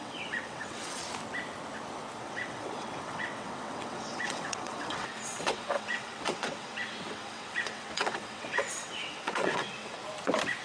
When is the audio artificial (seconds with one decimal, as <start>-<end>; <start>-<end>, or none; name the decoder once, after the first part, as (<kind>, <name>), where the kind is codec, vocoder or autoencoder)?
0.0-1.0 (vocoder, WaveNeXt); 2.2-10.0